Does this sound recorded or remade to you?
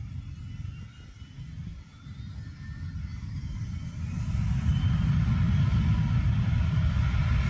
recorded